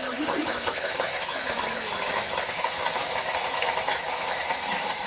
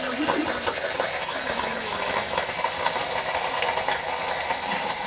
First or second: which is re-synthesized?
first